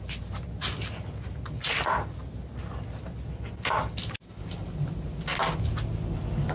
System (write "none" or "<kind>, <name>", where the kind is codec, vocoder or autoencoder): none